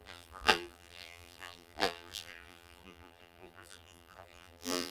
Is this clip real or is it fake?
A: fake